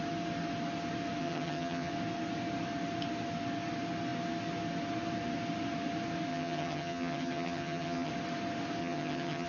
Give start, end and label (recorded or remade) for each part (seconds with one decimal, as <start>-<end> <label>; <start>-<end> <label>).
0.0-1.2 recorded; 1.2-1.9 remade; 1.9-6.3 recorded; 6.3-8.1 remade; 8.1-8.8 recorded; 8.8-9.5 remade